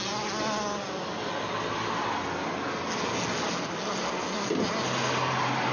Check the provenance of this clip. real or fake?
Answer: real